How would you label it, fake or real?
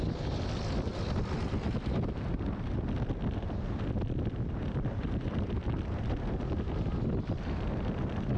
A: real